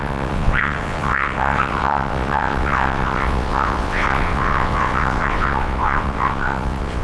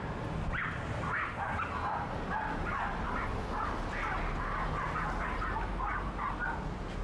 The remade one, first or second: first